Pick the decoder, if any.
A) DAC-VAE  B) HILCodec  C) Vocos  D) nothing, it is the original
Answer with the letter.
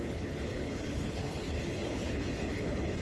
B